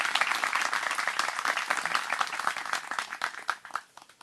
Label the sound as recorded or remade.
recorded